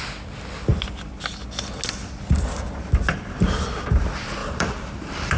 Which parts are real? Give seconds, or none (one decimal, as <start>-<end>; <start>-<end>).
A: 0.0-4.4